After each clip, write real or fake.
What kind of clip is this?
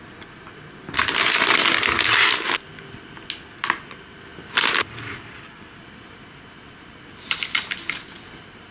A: real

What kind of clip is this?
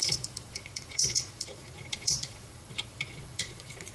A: fake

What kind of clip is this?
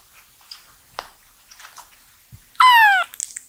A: real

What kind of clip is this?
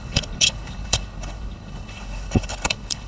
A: fake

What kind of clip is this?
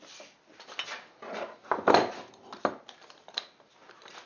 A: real